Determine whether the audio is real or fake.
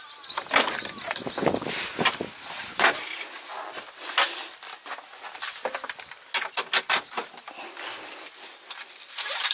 real